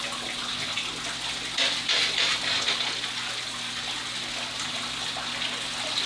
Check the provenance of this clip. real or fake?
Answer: real